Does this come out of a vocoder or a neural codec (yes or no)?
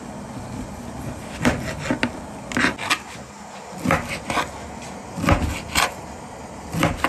no